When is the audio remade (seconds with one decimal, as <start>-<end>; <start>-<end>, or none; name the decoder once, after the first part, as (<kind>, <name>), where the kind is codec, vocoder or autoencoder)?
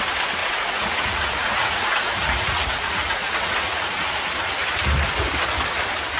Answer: 0.4-4.1 (vocoder, Vocos)